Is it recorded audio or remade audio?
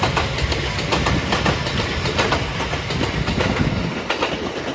recorded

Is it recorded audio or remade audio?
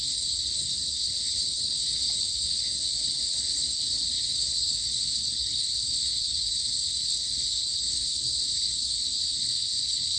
remade